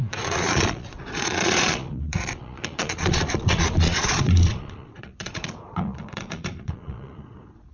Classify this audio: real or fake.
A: fake